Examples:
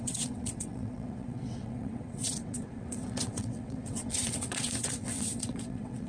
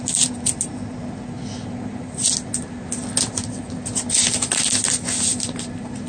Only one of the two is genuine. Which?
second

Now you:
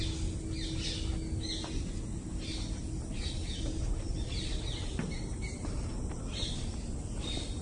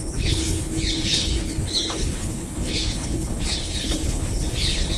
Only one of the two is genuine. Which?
first